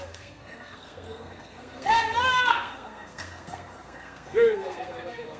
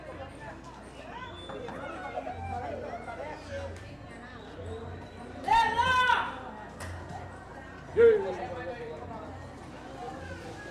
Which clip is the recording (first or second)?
second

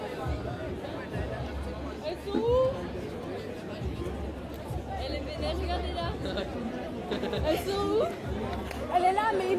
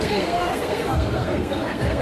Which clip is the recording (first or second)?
first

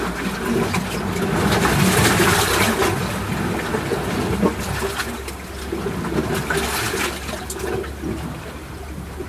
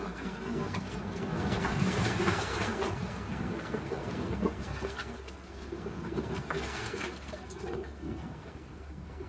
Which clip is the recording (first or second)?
first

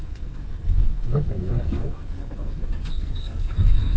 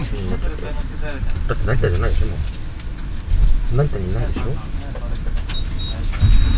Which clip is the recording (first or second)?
second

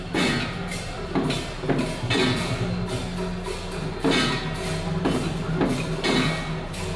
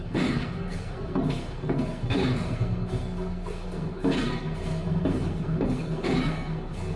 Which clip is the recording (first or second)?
first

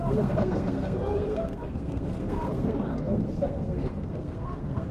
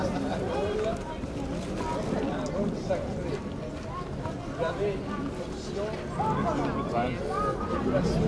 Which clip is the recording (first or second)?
second